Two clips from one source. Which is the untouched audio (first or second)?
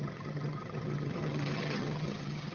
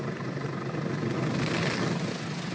second